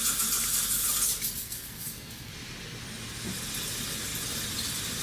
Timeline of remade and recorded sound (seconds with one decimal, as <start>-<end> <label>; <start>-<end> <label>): 0.0-1.4 recorded; 1.4-2.3 remade; 2.3-5.0 recorded